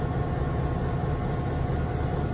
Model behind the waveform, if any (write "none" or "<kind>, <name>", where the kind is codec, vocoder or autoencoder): none